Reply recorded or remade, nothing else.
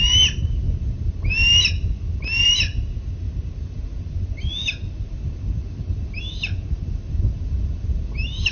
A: recorded